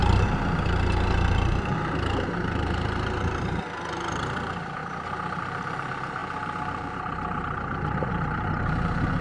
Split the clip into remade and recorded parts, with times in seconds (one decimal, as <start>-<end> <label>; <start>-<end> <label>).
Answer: 0.0-9.2 remade